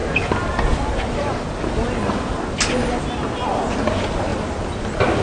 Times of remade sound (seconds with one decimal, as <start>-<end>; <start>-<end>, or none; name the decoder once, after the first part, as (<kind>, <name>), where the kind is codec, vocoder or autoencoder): none